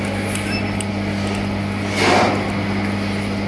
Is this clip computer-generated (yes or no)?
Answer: no